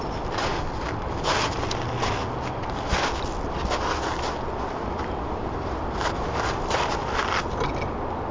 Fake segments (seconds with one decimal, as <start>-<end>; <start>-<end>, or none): 5.4-6.8

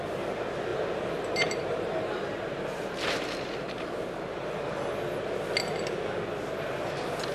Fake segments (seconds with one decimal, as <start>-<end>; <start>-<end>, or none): 0.7-4.6

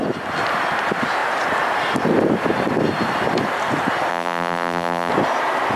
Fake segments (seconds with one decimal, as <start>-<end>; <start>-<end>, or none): 4.1-5.1

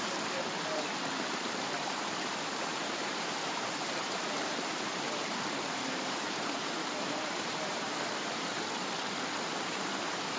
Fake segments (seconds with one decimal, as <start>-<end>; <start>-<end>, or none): 0.0-8.5; 9.4-10.4

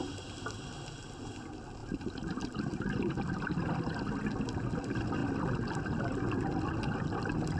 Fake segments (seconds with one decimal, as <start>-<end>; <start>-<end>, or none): 1.8-4.0

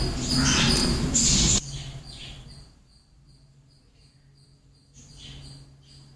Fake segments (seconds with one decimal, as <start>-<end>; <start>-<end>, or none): 0.8-3.8

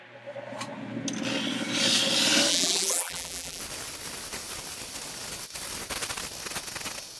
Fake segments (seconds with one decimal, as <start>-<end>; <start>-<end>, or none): 2.5-3.6